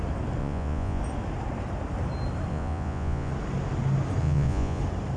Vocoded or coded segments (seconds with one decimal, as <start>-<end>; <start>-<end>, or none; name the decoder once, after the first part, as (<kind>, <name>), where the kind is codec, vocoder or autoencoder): 0.4-1.0 (vocoder, Vocos); 2.5-3.3; 4.2-4.8

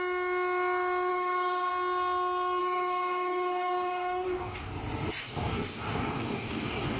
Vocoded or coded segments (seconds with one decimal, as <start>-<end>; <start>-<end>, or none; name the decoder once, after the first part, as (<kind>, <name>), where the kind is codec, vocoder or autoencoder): 1.1-1.7 (codec, DAC); 2.6-4.7; 5.2-7.0